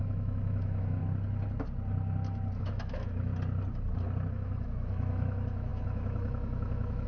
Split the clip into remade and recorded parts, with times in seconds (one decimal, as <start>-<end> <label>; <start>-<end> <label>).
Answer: 0.0-1.0 remade; 1.0-2.6 recorded; 2.6-3.3 remade; 3.3-4.3 recorded; 4.3-7.1 remade